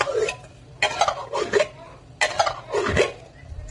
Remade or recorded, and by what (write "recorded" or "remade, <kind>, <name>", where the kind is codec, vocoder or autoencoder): recorded